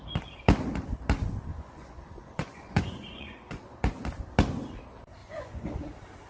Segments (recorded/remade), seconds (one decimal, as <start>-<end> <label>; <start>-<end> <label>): 0.0-1.5 recorded; 1.5-3.9 remade; 3.9-5.2 recorded; 5.2-5.7 remade; 5.7-6.3 recorded